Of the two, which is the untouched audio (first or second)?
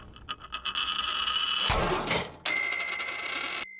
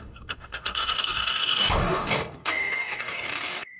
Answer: first